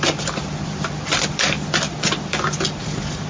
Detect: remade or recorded recorded